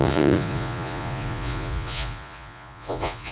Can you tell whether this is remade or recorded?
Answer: remade